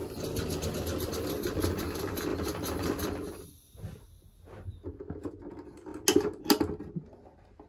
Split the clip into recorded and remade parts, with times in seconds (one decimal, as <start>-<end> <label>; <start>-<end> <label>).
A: 0.0-2.3 recorded; 2.3-3.5 remade; 3.5-7.7 recorded